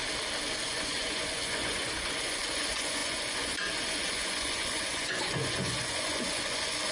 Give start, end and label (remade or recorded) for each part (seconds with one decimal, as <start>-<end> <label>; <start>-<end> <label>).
0.0-0.6 recorded; 0.6-6.9 remade